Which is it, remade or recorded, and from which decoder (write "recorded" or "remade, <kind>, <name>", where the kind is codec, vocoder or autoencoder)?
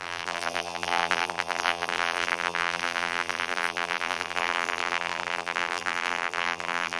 remade, vocoder, BigVGAN v2